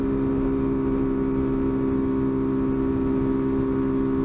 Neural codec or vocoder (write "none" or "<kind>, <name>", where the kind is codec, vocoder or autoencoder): none